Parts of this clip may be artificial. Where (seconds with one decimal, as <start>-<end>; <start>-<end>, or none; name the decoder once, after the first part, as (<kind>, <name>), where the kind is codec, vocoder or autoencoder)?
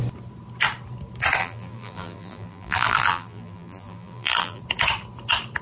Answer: 1.4-4.6 (vocoder, BigVGAN v2)